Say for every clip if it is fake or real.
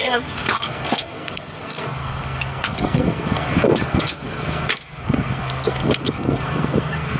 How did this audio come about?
fake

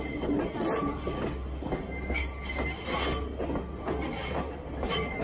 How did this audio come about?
real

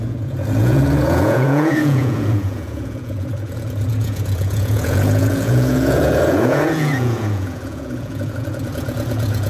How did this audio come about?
fake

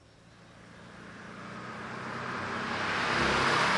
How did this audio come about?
real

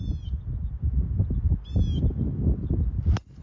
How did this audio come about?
real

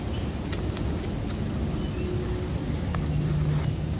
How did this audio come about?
real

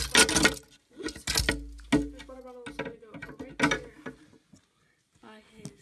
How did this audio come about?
real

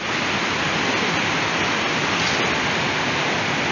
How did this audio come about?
real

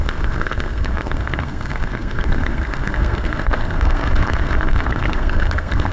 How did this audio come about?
fake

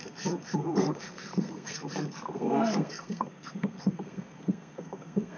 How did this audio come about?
fake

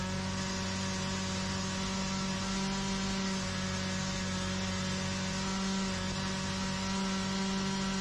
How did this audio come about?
real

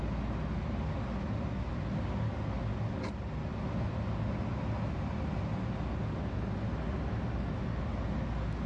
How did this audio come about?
real